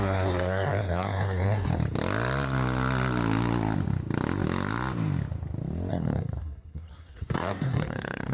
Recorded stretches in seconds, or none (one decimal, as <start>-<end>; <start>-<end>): 1.7-5.9